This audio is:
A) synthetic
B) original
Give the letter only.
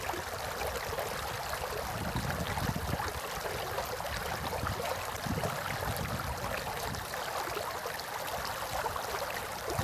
B